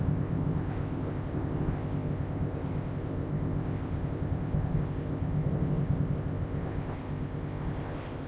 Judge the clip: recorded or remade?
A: remade